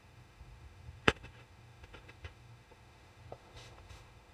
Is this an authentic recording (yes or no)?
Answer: no